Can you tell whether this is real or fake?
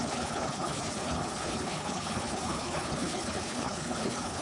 fake